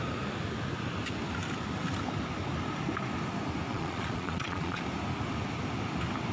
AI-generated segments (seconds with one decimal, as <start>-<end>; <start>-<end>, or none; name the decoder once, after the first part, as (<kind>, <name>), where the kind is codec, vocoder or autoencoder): 3.7-4.8 (vocoder, Vocos)